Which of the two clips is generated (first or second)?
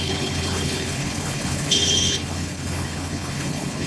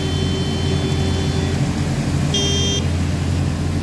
first